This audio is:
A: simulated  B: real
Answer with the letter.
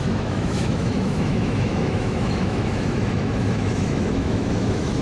A